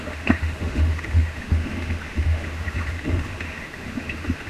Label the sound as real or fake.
fake